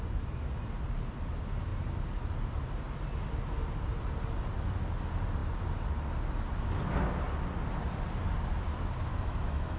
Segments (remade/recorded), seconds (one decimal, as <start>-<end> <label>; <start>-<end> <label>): 0.0-9.1 recorded; 9.1-9.8 remade